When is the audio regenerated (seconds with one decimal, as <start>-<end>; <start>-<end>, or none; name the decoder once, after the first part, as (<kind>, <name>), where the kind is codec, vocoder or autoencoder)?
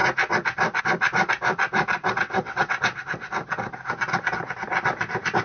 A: 2.0-2.7 (vocoder, WaveNeXt)